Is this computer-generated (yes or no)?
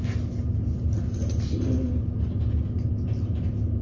no